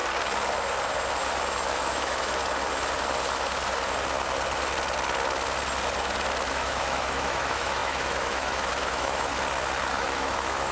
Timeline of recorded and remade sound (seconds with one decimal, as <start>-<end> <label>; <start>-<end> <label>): 0.0-1.7 recorded; 1.7-2.4 remade; 2.4-6.5 recorded; 6.5-9.3 remade; 9.3-9.9 recorded; 9.9-10.7 remade

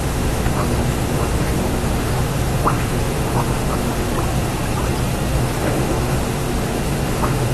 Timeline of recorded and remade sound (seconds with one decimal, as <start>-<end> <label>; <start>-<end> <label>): 0.0-4.1 remade; 4.1-5.4 recorded; 5.4-7.5 remade

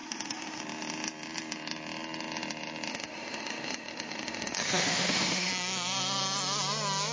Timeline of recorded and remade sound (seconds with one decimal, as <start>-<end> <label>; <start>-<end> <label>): 0.0-0.6 remade; 0.6-2.9 recorded; 2.9-5.5 remade; 5.5-7.1 recorded

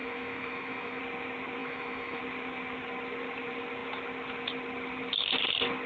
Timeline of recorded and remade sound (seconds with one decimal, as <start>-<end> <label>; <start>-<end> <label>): 0.0-1.0 remade; 1.0-1.6 recorded; 1.6-2.2 remade; 2.2-5.9 recorded